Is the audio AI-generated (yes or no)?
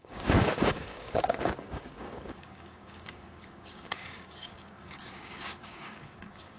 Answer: yes